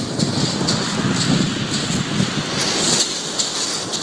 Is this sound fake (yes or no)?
no